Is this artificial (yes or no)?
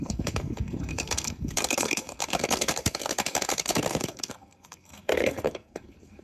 yes